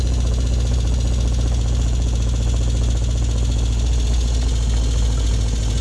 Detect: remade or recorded recorded